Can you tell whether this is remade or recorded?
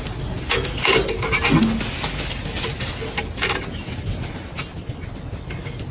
recorded